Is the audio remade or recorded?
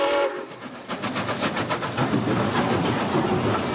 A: recorded